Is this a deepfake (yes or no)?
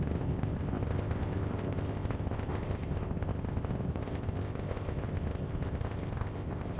yes